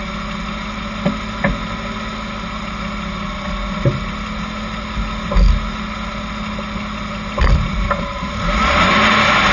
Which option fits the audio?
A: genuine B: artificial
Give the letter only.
A